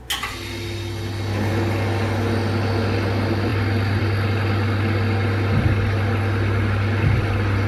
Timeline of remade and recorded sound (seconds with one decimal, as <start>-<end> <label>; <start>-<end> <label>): 0.0-7.7 recorded